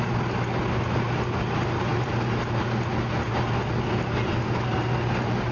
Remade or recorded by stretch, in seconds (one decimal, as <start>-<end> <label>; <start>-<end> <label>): 0.0-5.5 recorded